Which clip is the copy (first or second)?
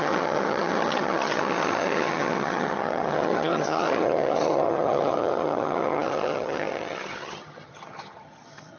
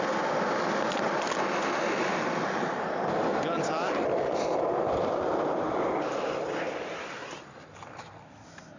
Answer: first